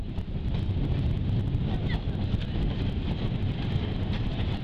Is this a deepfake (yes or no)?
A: no